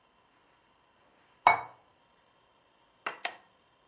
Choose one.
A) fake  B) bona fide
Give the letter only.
B